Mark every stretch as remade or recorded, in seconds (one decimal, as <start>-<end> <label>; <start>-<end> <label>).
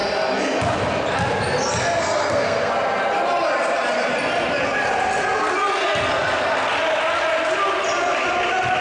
0.0-2.0 recorded; 2.0-2.7 remade; 2.7-8.8 recorded